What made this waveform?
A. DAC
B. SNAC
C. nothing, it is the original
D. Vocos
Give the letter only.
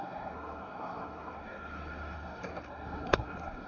B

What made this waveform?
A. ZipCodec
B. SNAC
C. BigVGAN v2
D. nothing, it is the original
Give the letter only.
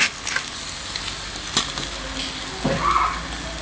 D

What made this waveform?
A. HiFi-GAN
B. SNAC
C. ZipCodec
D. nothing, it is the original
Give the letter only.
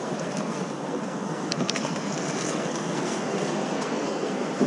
B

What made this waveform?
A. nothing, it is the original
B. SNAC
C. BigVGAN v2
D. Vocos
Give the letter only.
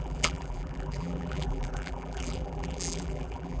C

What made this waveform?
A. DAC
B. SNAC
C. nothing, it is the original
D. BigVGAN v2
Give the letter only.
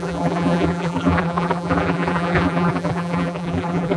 D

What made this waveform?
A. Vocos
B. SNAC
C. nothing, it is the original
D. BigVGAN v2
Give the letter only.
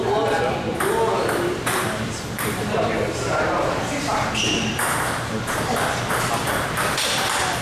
D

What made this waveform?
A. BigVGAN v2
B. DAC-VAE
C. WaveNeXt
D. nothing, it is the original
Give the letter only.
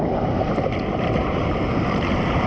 A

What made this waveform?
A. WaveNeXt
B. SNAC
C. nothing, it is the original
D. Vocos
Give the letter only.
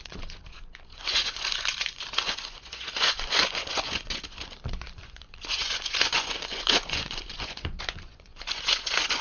D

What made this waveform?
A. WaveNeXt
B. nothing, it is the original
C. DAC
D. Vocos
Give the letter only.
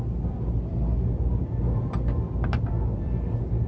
B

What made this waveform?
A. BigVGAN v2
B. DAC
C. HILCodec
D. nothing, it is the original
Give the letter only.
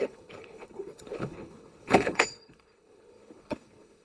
C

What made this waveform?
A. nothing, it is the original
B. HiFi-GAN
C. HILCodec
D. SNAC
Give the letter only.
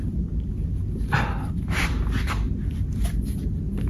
A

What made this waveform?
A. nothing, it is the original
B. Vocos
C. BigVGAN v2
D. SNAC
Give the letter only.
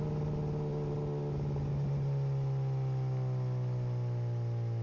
A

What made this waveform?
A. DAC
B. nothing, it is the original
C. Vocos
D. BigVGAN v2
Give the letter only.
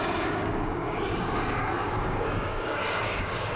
A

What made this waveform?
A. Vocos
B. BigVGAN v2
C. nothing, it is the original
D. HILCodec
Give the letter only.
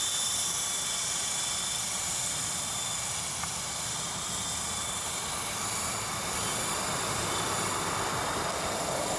B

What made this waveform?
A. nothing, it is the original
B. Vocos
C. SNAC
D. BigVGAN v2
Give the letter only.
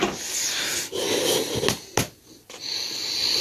A